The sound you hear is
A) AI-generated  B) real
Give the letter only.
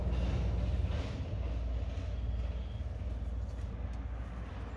B